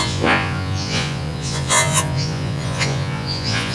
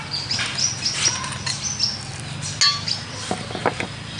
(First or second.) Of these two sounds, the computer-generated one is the first